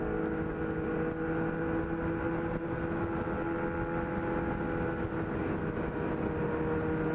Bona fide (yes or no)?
yes